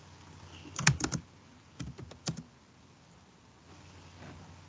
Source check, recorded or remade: recorded